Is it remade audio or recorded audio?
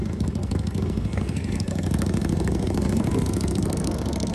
remade